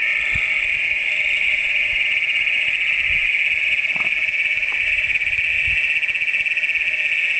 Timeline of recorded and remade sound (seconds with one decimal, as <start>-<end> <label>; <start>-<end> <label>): 0.0-1.4 recorded; 1.4-2.0 remade; 2.0-7.4 recorded